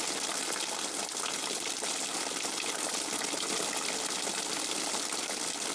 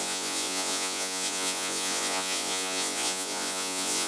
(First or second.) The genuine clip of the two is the first